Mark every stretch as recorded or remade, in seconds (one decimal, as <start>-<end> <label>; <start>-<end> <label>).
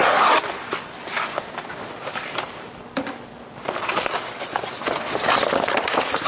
0.0-6.3 recorded